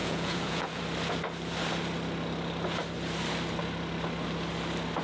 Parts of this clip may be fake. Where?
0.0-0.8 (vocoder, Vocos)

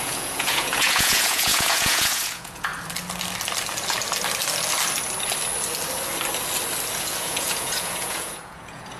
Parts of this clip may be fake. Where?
0.0-2.7 (vocoder, Vocos); 7.0-9.0